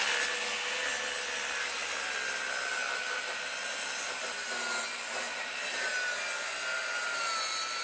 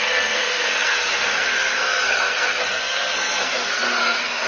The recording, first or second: first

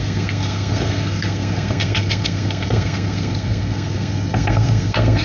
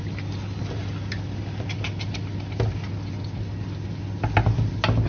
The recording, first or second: second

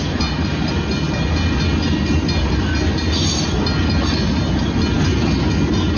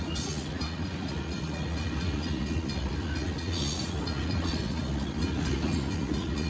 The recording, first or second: first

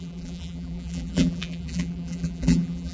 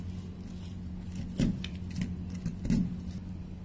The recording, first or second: second